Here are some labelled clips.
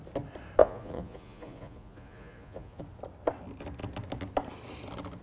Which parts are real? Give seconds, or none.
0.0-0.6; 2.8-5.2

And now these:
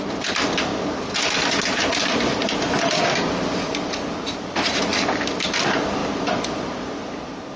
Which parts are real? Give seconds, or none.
0.0-7.6

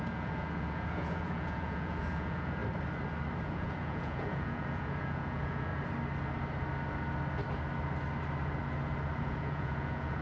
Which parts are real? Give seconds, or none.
2.6-3.4; 5.7-9.2

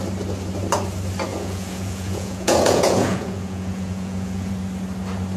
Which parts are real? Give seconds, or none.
0.0-1.3; 4.5-5.4

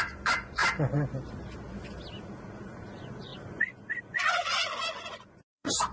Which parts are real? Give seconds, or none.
0.6-2.9

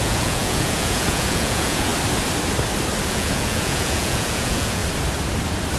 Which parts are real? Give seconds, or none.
1.9-3.1; 4.8-5.8

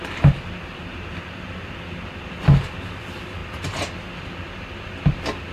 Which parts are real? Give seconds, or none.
0.0-5.5

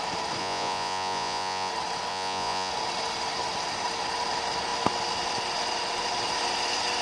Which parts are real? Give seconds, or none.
0.0-0.4; 1.7-2.1; 2.7-7.0